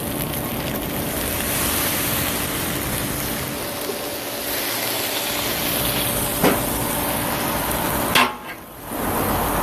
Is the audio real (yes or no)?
yes